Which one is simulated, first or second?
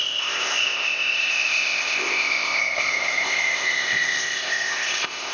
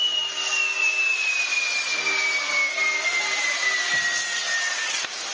first